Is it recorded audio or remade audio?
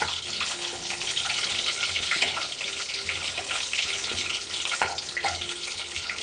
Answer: remade